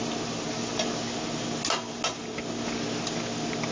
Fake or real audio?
real